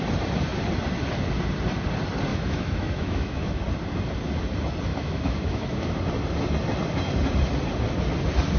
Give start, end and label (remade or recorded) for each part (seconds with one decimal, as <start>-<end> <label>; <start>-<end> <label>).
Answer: 0.0-2.3 recorded; 2.3-3.6 remade; 3.6-4.9 recorded; 4.9-5.9 remade; 5.9-8.6 recorded